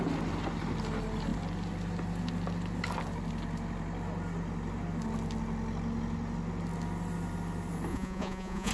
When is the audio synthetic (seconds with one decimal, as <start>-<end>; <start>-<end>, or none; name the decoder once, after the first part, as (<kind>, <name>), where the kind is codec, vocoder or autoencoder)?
7.9-8.7 (vocoder, Vocos)